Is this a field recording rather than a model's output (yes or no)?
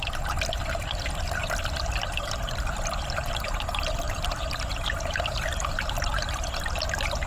no